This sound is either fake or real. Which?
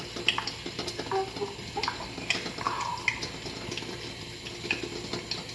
real